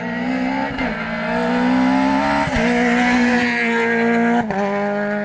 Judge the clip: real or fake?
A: real